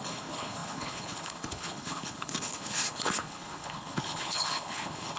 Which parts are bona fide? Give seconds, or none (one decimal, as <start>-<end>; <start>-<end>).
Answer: none